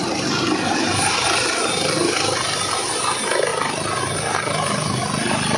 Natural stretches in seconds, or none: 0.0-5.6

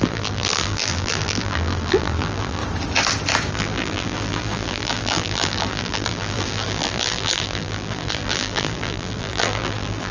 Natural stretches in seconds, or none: 2.6-3.5